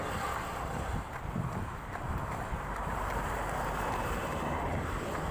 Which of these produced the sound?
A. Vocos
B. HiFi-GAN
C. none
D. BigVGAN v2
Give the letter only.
D